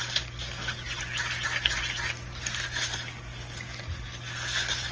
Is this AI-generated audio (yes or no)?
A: no